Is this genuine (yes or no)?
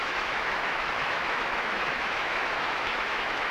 no